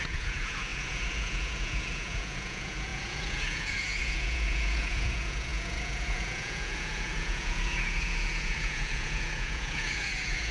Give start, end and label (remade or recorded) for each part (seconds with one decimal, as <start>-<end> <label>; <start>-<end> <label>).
0.0-10.5 remade

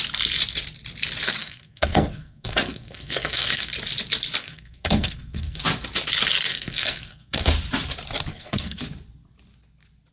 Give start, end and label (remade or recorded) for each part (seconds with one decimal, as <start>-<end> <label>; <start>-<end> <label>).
0.0-1.4 recorded; 1.4-3.7 remade; 3.7-4.4 recorded; 4.4-5.6 remade; 5.6-6.5 recorded; 6.5-7.5 remade; 7.5-8.3 recorded; 8.3-8.8 remade; 8.8-10.1 recorded

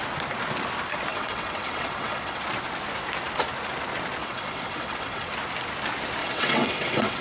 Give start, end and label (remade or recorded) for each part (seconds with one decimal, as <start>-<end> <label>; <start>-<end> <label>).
0.0-1.1 recorded; 1.1-2.4 remade; 2.4-4.2 recorded; 4.2-5.3 remade; 5.3-6.2 recorded; 6.2-7.2 remade

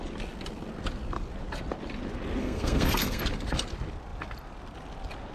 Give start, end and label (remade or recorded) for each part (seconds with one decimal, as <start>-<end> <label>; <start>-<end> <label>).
0.0-2.4 recorded; 2.4-3.2 remade; 3.2-5.3 recorded

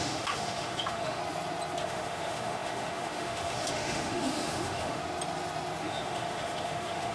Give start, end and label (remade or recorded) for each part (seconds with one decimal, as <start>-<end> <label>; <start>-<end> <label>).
0.0-1.2 remade; 1.2-1.8 recorded; 1.8-5.0 remade; 5.0-5.8 recorded; 5.8-7.1 remade

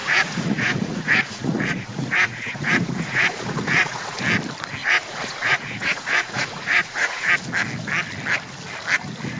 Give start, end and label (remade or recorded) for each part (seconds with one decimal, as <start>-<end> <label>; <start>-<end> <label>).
0.0-4.2 remade; 4.2-4.8 recorded; 4.8-7.3 remade; 7.3-9.4 recorded

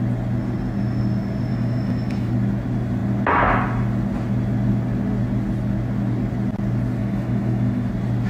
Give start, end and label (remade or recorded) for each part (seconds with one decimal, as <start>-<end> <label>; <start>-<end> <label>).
0.0-1.5 recorded; 1.5-2.3 remade; 2.3-7.0 recorded; 7.0-7.9 remade; 7.9-8.3 recorded

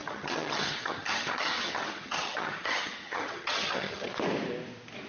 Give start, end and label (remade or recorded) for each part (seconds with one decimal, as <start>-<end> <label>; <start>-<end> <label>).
0.0-4.1 remade; 4.1-5.1 recorded